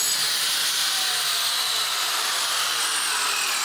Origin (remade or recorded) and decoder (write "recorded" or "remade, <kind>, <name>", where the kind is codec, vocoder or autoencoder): recorded